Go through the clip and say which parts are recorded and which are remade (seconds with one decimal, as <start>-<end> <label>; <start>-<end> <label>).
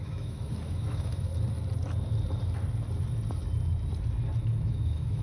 0.0-1.3 remade; 1.3-4.4 recorded; 4.4-5.2 remade